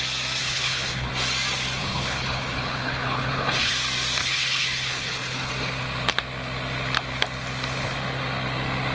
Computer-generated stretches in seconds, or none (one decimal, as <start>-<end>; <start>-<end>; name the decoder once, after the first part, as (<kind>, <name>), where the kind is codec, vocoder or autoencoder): 0.4-1.1 (codec, HILCodec); 1.8-3.7; 4.2-5.5